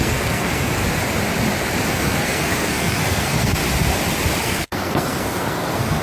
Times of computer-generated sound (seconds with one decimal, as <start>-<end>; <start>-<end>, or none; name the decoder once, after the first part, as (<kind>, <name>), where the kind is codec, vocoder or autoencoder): 0.0-0.8 (codec, SNAC); 1.9-3.6; 4.4-6.0

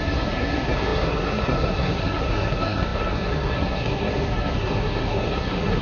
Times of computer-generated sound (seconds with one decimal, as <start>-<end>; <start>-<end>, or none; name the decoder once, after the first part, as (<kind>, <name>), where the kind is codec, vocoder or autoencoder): 0.0-5.8 (codec, SNAC)

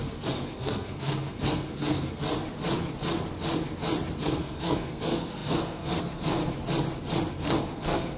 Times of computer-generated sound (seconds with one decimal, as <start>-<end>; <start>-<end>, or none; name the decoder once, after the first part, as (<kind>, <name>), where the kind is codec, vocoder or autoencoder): 0.0-2.2 (codec, SNAC); 4.2-6.4; 7.3-8.2